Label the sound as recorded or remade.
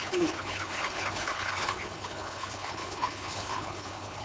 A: remade